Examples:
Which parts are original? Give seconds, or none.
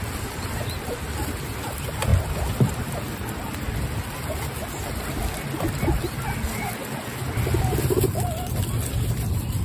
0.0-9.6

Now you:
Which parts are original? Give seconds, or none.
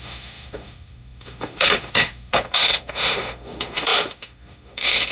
none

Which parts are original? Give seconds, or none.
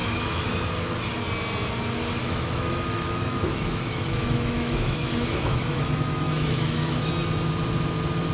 0.5-2.2; 7.1-8.3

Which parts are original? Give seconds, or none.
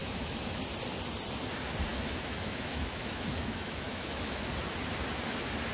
0.6-1.9; 4.5-5.7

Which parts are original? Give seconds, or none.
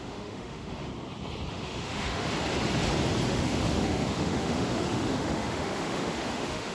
0.9-1.5; 2.3-3.3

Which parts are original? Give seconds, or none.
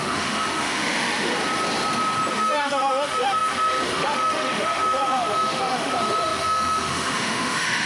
1.3-2.3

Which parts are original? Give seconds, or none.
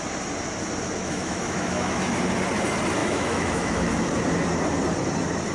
0.0-1.0; 2.2-3.0; 3.9-5.5